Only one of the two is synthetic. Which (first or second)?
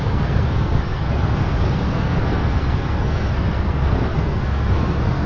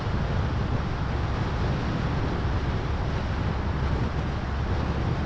first